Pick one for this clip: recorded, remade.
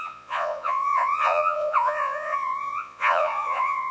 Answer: remade